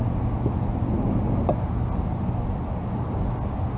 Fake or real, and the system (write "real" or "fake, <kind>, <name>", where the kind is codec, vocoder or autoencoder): real